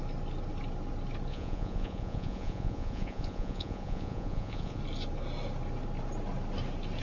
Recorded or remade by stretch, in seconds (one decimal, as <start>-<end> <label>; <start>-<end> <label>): 0.0-1.3 recorded; 1.3-4.8 remade; 4.8-7.0 recorded